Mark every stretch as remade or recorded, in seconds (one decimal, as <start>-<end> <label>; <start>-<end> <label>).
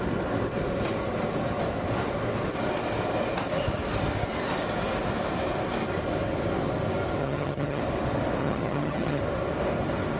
0.0-7.2 recorded; 7.2-7.8 remade; 7.8-8.4 recorded; 8.4-9.2 remade; 9.2-10.2 recorded